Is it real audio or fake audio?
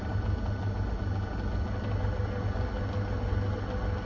real